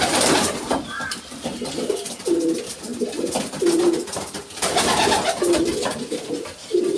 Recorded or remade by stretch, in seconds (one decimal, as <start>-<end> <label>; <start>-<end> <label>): 0.0-7.0 recorded